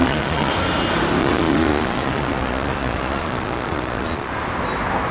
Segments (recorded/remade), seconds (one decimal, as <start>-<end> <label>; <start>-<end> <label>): 0.0-0.5 remade; 0.5-1.2 recorded; 1.2-4.3 remade; 4.3-5.1 recorded